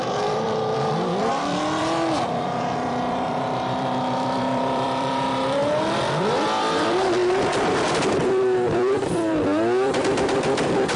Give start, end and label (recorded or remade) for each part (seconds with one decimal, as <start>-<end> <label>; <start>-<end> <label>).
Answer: 0.0-5.6 remade; 5.6-6.2 recorded; 6.2-11.0 remade